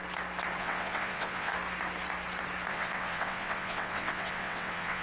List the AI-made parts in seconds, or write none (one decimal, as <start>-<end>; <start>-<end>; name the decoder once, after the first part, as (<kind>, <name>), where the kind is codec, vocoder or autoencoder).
0.6-1.5 (vocoder, WaveNeXt); 2.7-5.0